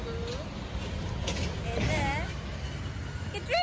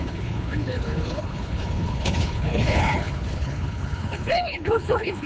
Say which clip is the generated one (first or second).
second